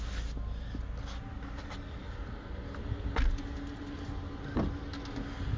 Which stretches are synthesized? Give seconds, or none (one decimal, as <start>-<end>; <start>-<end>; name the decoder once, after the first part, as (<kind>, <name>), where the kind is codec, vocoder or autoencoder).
none